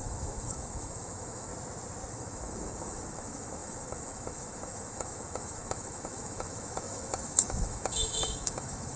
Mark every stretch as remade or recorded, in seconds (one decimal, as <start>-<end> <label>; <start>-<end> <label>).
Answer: 0.0-1.5 remade; 1.5-2.1 recorded; 2.1-9.0 remade

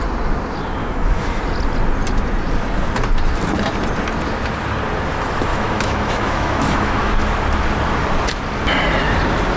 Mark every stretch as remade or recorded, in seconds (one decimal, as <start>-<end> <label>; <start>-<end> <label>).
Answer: 0.0-0.8 recorded; 0.8-1.4 remade; 1.4-5.5 recorded; 5.5-7.1 remade; 7.1-9.6 recorded

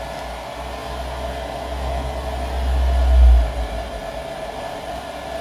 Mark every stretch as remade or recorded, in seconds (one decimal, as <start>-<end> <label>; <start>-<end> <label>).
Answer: 0.0-5.4 recorded